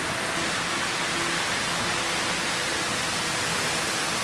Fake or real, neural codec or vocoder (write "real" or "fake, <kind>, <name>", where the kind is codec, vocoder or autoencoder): real